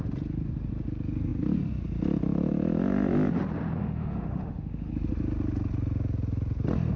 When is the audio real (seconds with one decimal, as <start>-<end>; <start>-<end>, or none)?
0.0-3.8; 4.9-7.0